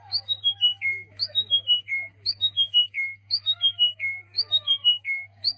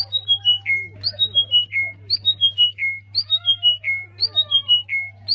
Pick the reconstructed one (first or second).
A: first